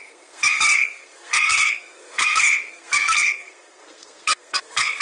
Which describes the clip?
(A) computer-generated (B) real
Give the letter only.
A